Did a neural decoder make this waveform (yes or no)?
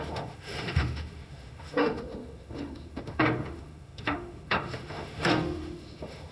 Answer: yes